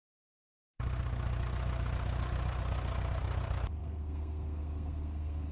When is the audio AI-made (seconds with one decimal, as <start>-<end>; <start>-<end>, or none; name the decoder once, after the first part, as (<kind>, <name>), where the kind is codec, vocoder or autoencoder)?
0.0-0.5 (codec, SNAC); 3.8-5.5